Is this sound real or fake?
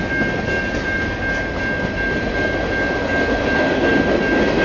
real